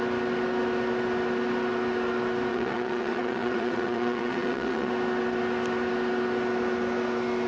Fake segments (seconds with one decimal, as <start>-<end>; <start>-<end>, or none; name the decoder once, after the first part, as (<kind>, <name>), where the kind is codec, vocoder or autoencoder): 2.5-4.9 (vocoder, WaveNeXt)